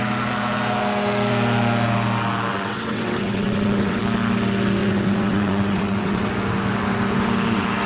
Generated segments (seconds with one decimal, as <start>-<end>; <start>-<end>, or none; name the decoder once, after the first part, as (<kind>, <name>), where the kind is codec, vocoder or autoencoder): 2.5-4.0 (vocoder, WaveNeXt); 4.8-6.3